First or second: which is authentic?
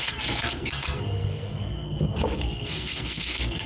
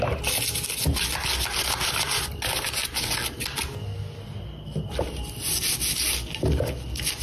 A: second